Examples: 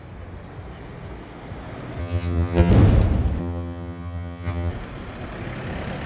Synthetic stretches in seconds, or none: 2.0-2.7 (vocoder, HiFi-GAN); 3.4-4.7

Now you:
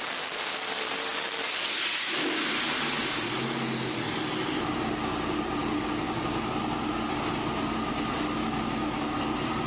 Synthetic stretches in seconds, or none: none

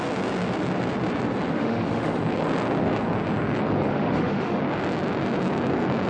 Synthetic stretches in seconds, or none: 1.5-2.2 (autoencoder, DAC-VAE); 3.9-4.6

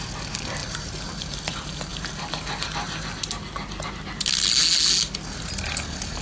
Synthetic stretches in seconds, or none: none

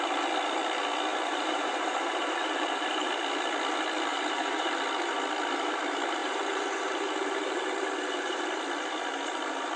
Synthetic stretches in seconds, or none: 1.1-3.1 (vocoder, BigVGAN v2); 4.1-4.7; 6.2-8.4

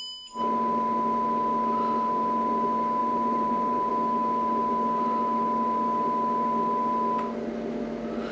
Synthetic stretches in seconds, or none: 3.0-3.9 (vocoder, BigVGAN v2)